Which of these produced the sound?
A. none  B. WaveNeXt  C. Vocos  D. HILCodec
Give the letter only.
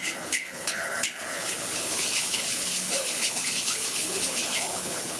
D